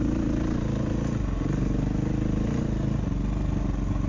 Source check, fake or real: real